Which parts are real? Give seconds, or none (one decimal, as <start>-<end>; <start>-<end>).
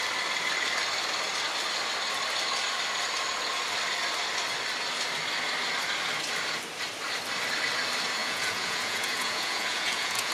0.0-8.2